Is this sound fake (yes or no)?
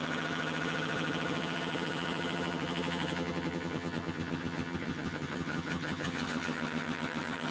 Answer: yes